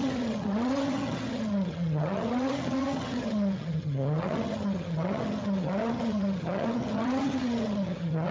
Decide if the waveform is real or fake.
fake